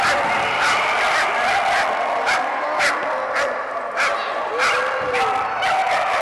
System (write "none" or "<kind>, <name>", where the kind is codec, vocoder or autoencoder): none